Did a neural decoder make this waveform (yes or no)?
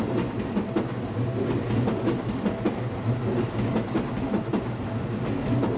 no